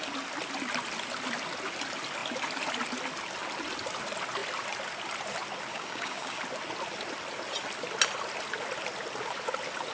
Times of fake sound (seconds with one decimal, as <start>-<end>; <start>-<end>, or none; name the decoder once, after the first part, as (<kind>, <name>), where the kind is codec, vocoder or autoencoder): 5.7-6.4 (codec, DAC)